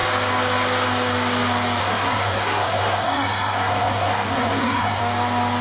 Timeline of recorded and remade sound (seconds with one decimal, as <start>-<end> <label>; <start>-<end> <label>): 0.0-1.8 recorded; 1.8-5.0 remade; 5.0-5.6 recorded